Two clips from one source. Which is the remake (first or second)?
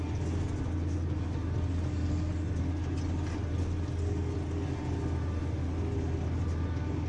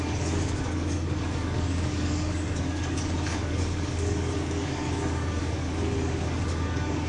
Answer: second